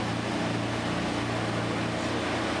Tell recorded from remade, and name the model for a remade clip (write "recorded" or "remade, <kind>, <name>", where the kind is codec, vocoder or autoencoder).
recorded